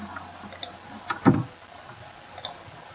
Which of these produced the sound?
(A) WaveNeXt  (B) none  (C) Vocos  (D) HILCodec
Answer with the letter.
B